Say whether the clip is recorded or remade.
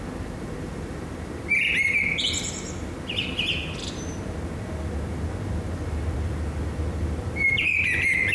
recorded